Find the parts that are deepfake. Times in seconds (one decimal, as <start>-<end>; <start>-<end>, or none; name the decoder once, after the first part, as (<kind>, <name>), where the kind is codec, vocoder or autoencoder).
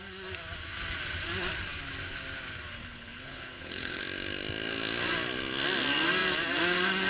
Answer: 2.8-4.0 (codec, HILCodec)